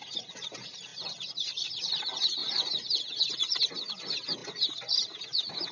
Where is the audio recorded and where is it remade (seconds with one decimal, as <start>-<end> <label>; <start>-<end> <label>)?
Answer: 0.0-0.9 recorded; 0.9-1.7 remade; 1.7-2.4 recorded; 2.4-3.2 remade; 3.2-5.7 recorded